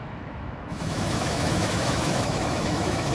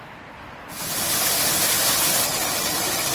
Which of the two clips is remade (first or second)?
first